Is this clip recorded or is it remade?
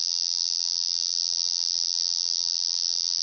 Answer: remade